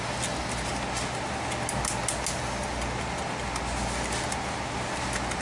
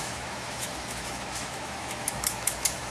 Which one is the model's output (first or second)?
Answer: second